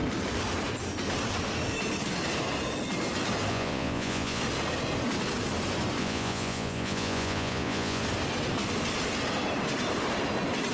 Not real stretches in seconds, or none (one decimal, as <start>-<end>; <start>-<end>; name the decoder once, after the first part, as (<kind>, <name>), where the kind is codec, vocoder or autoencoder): 3.5-4.4 (vocoder, Vocos); 6.0-8.0